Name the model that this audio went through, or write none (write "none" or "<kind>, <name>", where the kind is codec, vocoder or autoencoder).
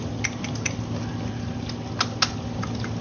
none